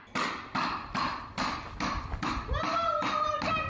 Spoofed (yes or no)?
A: no